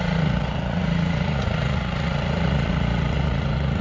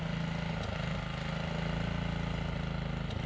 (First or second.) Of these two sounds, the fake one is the first